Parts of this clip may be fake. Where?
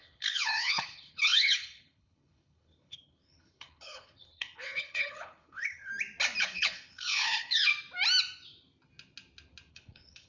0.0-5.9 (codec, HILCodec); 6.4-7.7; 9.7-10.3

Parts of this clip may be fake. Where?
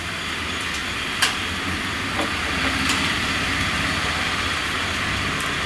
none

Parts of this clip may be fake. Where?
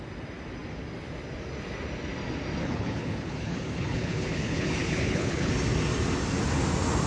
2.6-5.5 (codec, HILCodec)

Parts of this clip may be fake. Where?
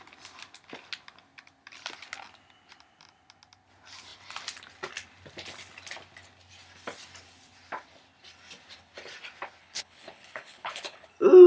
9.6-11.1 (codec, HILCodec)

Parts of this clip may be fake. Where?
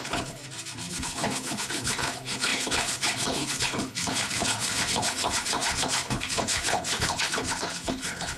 0.0-0.4 (codec, HILCodec); 0.9-8.4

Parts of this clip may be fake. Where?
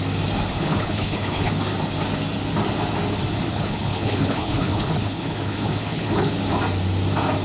0.5-1.5 (codec, HILCodec); 3.5-6.3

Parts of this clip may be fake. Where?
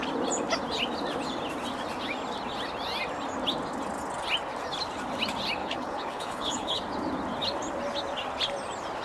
5.6-6.8 (codec, HILCodec)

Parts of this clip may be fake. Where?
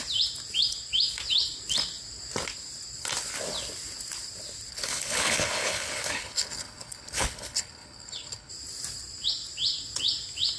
4.7-8.5 (codec, HILCodec)